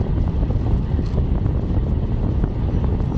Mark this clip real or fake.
real